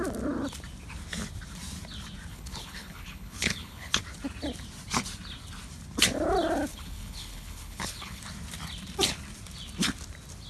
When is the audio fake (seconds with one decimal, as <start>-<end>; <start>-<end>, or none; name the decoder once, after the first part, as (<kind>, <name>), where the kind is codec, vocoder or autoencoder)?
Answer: 2.3-4.0 (codec, HILCodec); 6.7-8.2